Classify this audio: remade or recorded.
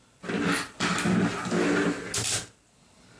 recorded